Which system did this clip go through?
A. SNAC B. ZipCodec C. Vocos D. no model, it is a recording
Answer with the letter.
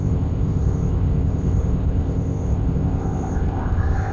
B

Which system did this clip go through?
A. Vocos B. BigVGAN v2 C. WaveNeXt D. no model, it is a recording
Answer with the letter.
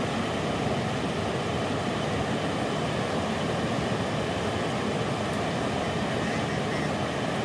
D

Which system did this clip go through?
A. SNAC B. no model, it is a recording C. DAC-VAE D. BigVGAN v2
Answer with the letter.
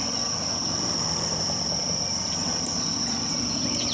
B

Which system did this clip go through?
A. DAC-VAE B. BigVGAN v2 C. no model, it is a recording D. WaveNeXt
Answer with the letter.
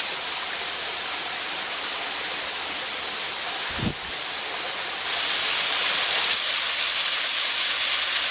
C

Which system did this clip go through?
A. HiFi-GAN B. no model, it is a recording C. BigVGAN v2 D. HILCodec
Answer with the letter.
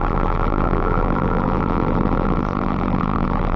C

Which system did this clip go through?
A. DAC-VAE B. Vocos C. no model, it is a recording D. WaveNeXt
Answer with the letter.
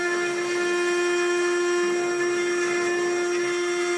C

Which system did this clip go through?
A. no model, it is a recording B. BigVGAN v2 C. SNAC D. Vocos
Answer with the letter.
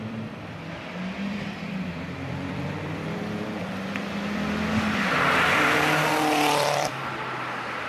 B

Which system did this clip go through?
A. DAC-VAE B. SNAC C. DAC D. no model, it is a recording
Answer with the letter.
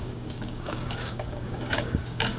C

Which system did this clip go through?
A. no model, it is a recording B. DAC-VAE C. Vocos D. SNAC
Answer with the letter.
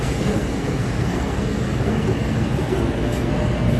D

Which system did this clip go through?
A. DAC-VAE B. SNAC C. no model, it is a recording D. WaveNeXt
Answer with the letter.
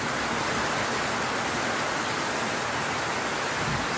C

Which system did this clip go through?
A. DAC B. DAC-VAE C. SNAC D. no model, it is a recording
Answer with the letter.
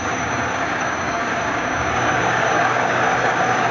A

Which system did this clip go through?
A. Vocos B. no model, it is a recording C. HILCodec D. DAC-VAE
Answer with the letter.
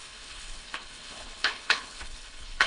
C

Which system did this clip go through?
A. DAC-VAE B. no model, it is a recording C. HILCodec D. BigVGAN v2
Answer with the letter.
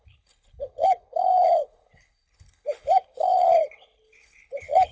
C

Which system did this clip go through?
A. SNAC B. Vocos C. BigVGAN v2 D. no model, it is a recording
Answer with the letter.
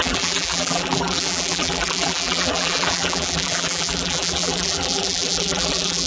C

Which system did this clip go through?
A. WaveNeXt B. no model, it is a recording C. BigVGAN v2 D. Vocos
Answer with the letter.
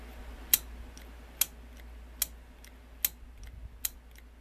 B